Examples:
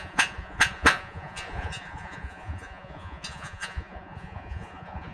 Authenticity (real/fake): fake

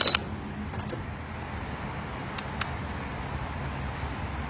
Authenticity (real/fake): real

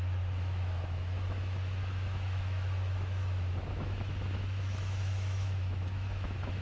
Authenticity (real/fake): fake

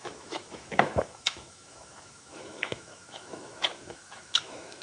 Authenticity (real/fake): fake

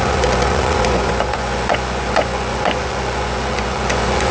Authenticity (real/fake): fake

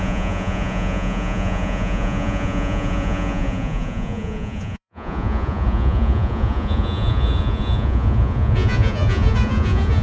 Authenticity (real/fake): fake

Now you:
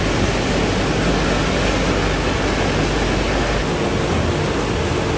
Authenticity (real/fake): real